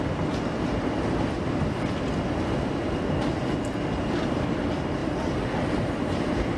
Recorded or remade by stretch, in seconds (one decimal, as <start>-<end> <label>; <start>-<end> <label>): 0.0-6.6 recorded

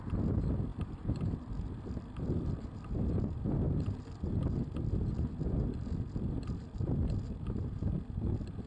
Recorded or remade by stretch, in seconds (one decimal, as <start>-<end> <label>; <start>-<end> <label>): 0.0-0.7 recorded; 0.7-4.3 remade; 4.3-8.7 recorded

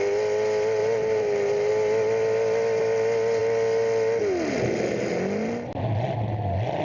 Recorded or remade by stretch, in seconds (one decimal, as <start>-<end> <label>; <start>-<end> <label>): 0.0-0.8 recorded; 0.8-1.7 remade; 1.7-6.8 recorded